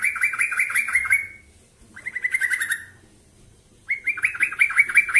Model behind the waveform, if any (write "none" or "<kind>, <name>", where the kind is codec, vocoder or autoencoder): none